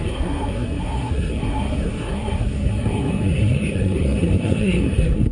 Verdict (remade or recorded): remade